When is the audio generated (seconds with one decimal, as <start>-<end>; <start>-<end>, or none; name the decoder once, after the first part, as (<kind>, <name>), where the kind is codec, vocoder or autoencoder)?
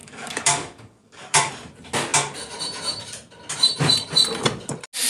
0.0-1.5 (codec, DAC)